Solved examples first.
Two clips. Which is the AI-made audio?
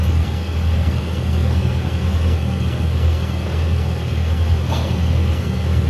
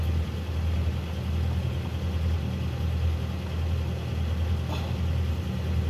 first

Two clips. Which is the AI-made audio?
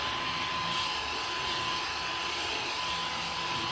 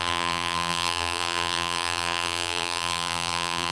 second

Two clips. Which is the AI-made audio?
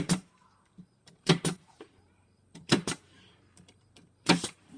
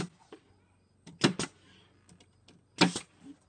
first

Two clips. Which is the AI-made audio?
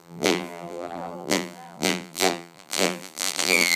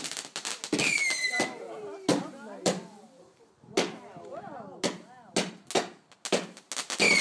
first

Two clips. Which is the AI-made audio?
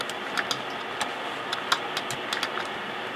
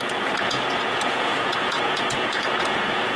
second